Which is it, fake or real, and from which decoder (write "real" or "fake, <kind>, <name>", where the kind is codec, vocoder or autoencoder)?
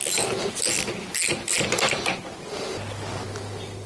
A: real